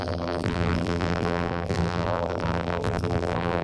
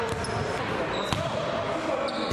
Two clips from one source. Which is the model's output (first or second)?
first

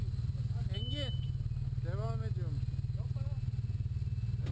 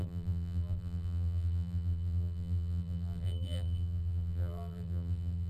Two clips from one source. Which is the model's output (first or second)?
second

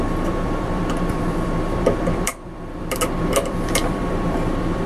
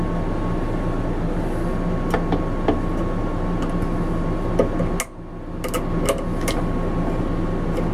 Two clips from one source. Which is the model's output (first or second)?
first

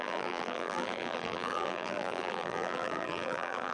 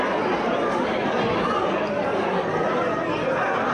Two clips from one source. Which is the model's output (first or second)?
first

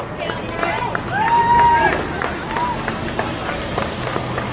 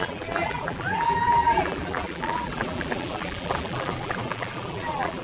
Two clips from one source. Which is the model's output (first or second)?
second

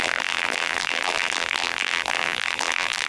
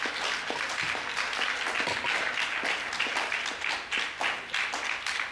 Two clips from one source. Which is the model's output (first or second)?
first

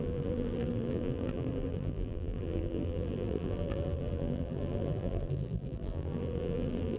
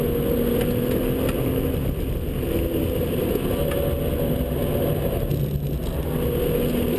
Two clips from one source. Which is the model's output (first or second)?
first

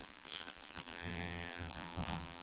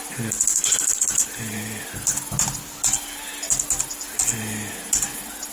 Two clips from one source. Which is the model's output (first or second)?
first